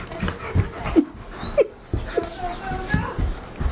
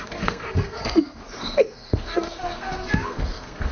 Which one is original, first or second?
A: first